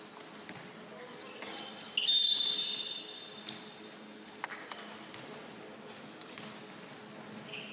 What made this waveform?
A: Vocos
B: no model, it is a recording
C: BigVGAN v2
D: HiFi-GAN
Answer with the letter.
B